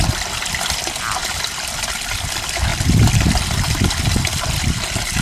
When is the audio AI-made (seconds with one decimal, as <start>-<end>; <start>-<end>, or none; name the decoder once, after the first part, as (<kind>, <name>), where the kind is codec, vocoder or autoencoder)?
1.2-1.8 (vocoder, BigVGAN v2); 2.7-4.0